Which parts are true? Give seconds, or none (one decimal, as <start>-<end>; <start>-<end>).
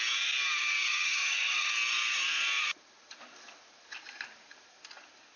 0.0-0.9; 1.7-5.4